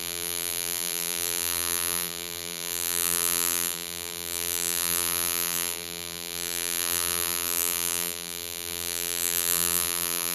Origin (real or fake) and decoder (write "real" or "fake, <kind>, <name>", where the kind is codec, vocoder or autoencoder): fake, vocoder, BigVGAN v2